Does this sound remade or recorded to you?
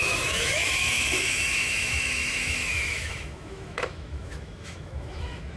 remade